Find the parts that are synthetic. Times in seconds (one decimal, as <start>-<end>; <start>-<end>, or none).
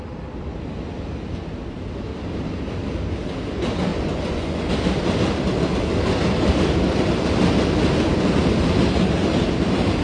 3.9-4.7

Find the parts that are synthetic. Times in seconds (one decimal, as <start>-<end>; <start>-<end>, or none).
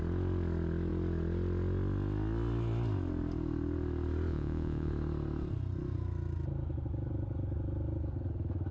4.3-4.9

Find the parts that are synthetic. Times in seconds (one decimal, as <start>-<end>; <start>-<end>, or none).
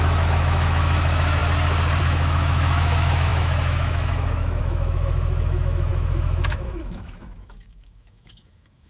0.0-1.4; 2.0-8.9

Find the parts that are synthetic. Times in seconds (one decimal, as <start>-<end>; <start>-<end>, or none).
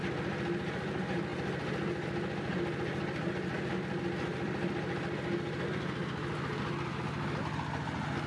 none